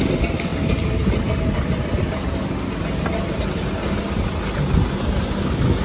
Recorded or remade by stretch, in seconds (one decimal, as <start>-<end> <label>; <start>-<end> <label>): 0.0-5.8 recorded